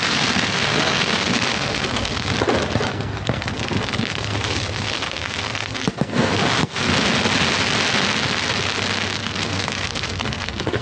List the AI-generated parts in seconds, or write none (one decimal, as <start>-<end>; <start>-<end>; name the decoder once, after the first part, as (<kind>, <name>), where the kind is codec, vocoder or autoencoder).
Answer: 0.0-2.3 (codec, SNAC); 2.9-6.9; 9.2-10.8